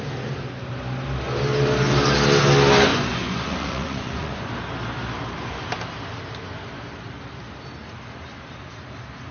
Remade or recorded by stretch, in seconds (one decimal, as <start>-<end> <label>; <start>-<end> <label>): 0.0-2.9 recorded; 2.9-4.5 remade; 4.5-9.3 recorded